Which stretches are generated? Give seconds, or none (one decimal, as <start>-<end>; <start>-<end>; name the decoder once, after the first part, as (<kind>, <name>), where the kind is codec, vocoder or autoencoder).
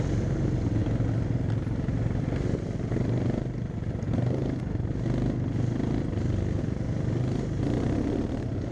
none